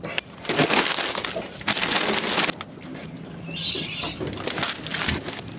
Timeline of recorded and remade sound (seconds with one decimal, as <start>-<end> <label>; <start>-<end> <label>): 0.0-5.6 recorded